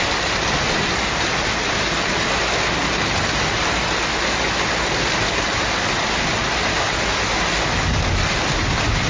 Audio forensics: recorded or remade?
recorded